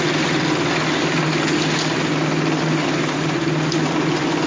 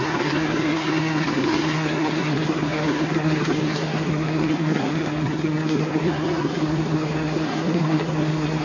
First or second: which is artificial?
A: second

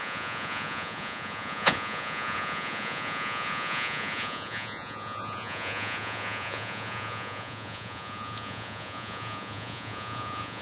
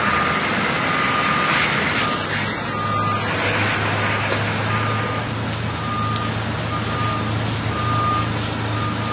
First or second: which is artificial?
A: first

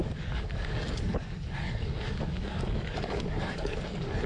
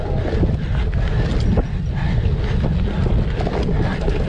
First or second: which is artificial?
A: first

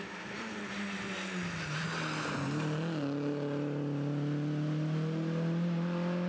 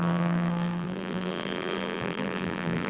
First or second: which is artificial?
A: second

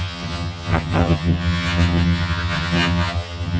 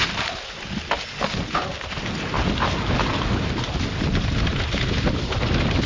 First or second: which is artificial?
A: first